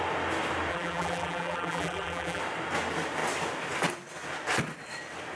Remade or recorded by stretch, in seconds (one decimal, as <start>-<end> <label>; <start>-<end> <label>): 0.0-0.7 recorded; 0.7-2.4 remade; 2.4-5.4 recorded